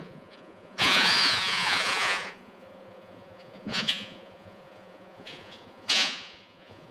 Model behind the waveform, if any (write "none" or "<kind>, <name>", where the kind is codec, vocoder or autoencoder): vocoder, Vocos